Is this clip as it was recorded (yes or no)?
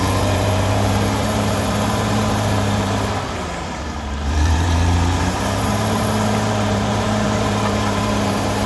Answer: no